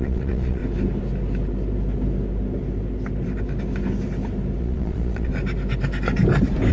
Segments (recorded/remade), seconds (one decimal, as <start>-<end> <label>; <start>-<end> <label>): 0.0-0.6 remade; 0.6-4.6 recorded; 4.6-5.3 remade; 5.3-6.7 recorded